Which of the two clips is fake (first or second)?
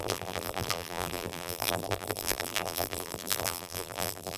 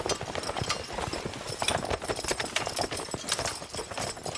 first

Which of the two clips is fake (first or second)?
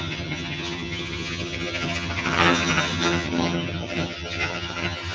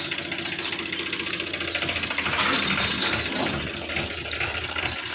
first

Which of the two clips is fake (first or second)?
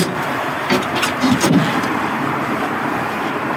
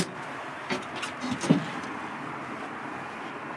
first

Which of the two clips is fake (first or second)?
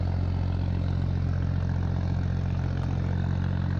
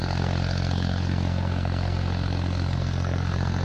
second